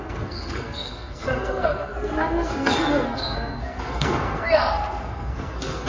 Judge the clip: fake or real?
fake